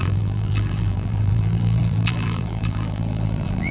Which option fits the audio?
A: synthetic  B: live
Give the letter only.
A